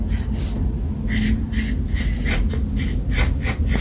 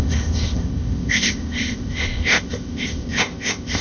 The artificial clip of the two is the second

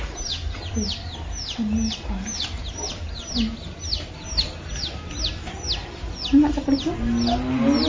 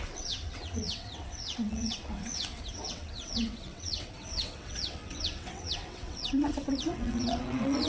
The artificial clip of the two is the second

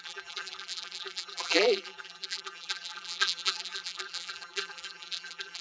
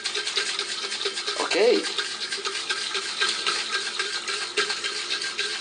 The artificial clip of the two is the first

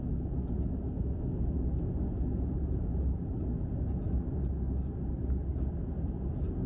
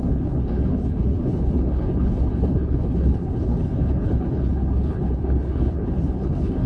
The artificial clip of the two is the second